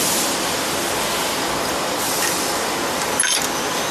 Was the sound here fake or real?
real